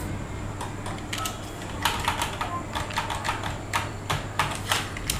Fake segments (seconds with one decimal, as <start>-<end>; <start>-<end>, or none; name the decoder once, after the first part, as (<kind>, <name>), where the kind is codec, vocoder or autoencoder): none